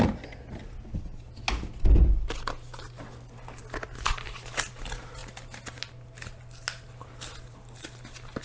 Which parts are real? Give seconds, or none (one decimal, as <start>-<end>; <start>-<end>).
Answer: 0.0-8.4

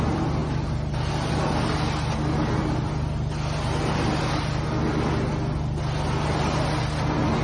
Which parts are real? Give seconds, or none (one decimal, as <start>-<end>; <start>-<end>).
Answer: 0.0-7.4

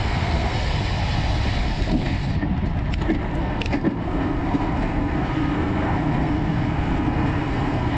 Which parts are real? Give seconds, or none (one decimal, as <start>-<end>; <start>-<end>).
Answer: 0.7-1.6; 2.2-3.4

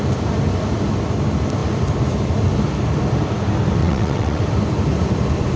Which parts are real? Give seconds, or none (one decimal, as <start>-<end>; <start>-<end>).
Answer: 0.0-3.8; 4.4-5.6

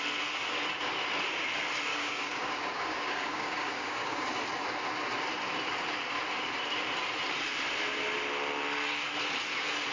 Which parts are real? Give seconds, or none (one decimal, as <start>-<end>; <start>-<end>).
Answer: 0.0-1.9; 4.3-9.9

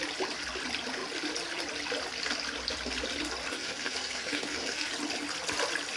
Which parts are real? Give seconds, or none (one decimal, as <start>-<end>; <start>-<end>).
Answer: 0.0-3.5; 4.9-6.0

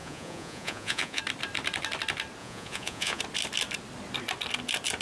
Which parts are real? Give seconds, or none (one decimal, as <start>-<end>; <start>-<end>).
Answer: 1.2-2.4; 3.2-5.0

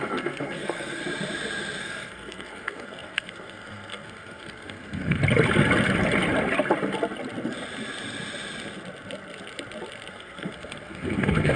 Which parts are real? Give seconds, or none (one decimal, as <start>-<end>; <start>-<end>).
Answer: 1.0-1.8; 5.2-10.1